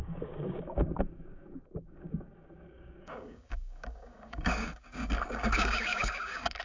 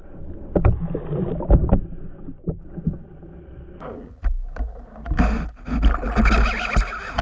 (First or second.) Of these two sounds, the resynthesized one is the first